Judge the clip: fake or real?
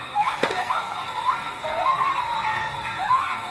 fake